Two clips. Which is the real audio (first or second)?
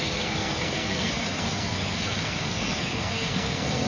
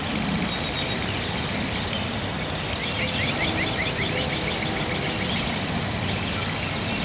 second